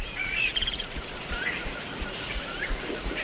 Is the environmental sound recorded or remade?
remade